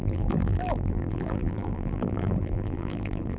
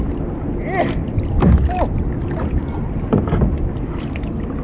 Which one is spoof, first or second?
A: first